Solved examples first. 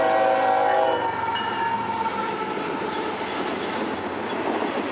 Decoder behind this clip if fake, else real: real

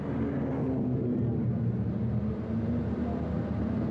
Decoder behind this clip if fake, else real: real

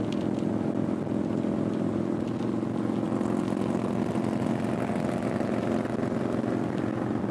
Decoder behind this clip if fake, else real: real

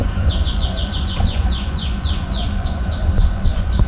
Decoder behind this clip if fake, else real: fake, vocoder, Vocos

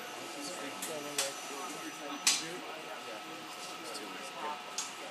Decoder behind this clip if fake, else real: real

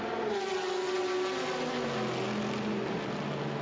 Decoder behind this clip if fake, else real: real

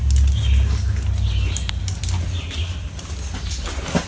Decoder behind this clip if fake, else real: real